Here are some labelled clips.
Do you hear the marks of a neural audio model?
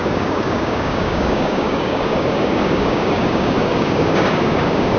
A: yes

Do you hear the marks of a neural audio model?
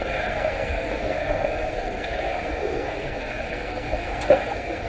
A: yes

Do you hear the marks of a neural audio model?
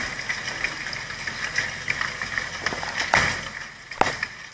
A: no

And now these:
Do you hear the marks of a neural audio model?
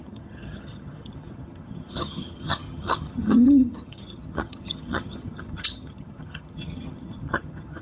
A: yes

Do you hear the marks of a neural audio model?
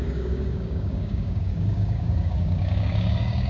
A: yes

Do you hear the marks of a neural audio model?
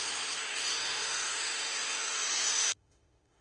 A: yes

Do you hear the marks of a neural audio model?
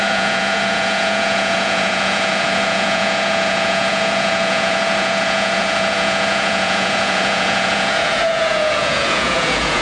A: yes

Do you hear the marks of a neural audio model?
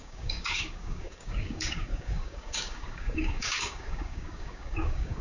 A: yes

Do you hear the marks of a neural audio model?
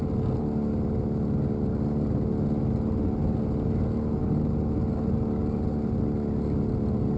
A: no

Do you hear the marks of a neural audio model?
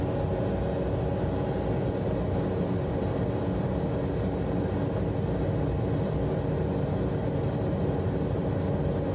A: no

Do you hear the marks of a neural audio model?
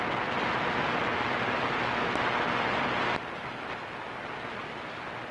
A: no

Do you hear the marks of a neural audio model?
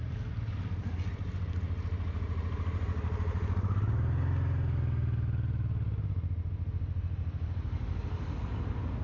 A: no